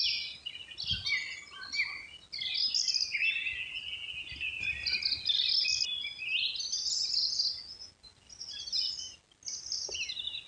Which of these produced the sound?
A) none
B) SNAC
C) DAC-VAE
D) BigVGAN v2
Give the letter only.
A